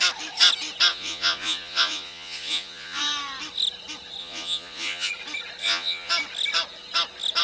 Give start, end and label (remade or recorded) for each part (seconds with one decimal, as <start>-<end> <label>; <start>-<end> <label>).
0.0-0.9 recorded; 0.9-3.0 remade; 3.0-4.2 recorded; 4.2-5.1 remade; 5.1-5.6 recorded; 5.6-6.1 remade; 6.1-7.4 recorded